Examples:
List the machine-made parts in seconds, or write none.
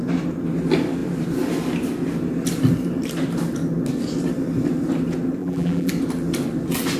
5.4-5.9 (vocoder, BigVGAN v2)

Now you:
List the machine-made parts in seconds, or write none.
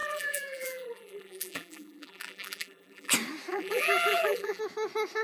0.0-3.1 (vocoder, BigVGAN v2); 3.5-4.6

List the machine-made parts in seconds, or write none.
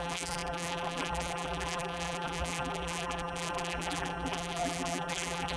0.0-5.6 (vocoder, BigVGAN v2)